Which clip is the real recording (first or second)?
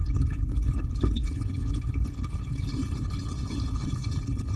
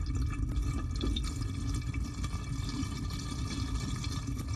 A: second